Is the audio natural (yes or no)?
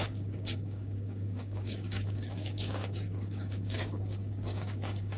no